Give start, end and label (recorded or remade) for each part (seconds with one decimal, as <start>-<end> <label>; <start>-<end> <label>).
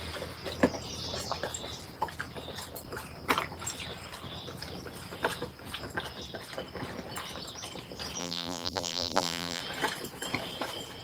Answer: 0.0-8.2 recorded; 8.2-9.6 remade; 9.6-11.0 recorded